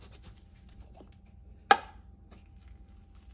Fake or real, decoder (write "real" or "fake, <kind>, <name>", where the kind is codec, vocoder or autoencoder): real